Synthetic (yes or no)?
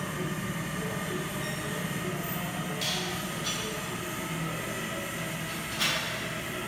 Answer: no